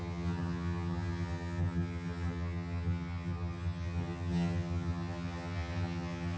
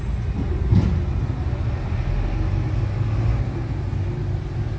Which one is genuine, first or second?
second